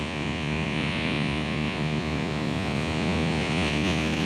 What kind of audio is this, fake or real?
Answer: fake